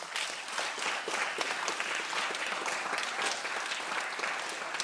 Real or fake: real